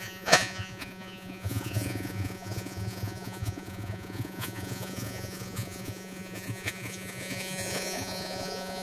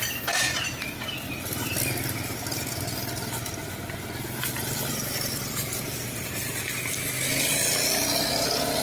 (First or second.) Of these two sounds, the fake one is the first